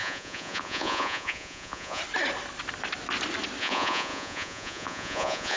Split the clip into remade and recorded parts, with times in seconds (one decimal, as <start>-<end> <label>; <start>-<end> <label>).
0.0-2.0 remade; 2.0-3.6 recorded; 3.6-5.6 remade